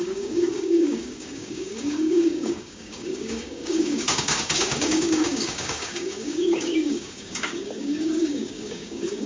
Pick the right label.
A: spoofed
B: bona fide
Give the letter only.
A